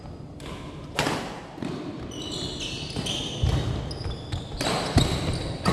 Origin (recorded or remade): recorded